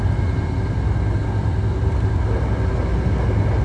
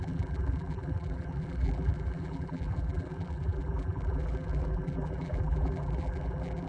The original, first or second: first